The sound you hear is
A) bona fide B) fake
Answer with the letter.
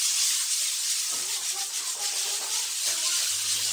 A